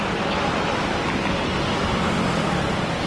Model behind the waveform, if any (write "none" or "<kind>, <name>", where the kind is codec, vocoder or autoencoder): none